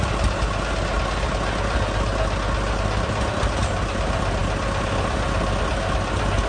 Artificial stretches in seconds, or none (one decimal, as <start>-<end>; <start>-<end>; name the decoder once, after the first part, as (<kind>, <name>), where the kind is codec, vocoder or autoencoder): none